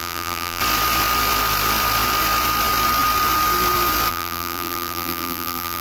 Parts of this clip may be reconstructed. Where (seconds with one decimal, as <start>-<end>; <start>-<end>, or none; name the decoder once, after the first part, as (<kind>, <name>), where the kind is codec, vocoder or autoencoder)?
0.0-0.6 (vocoder, BigVGAN v2); 4.1-5.8